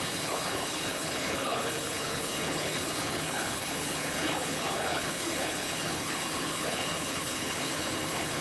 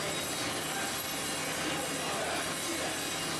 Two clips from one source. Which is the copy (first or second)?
first